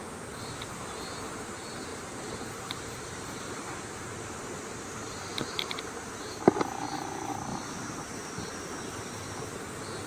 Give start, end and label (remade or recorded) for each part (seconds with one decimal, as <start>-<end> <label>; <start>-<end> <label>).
0.0-1.9 recorded; 1.9-3.7 remade; 3.7-5.3 recorded; 5.3-6.5 remade; 6.5-7.5 recorded; 7.5-8.3 remade; 8.3-10.1 recorded